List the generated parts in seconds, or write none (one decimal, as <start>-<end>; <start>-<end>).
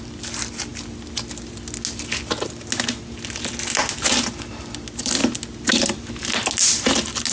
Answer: none